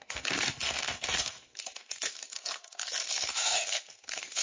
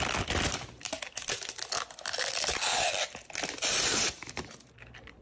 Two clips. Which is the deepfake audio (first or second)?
first